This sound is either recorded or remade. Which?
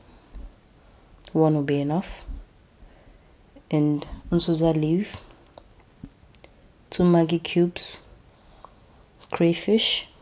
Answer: recorded